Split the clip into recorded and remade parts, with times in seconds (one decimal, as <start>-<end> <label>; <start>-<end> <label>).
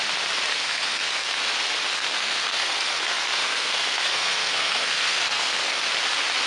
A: 0.0-0.5 recorded; 0.5-1.4 remade; 1.4-1.9 recorded; 1.9-5.8 remade; 5.8-6.5 recorded